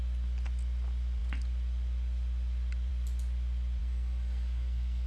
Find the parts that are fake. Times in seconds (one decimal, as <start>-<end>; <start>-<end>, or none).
3.8-5.1